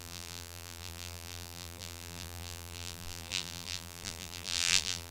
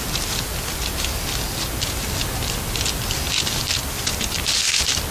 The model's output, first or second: first